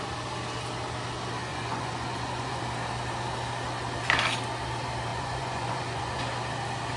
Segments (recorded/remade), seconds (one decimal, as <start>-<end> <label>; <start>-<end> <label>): 0.0-1.5 recorded; 1.5-2.6 remade; 2.6-5.1 recorded; 5.1-6.2 remade; 6.2-7.0 recorded